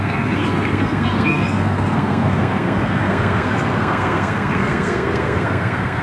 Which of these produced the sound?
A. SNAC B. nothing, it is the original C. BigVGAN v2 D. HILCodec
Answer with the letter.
A